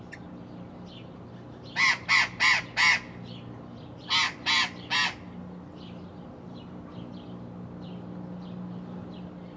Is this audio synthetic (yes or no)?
no